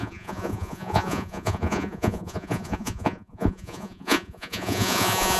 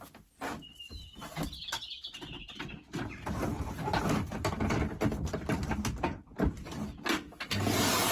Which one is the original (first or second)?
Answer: second